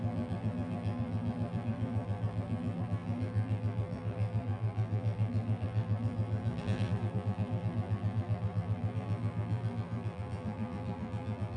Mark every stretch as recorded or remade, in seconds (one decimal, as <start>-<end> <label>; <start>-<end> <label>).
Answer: 0.0-11.6 remade